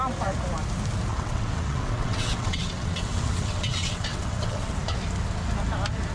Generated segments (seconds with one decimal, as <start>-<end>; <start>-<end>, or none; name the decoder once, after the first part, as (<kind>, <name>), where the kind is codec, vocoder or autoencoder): 1.1-4.8 (vocoder, WaveNeXt)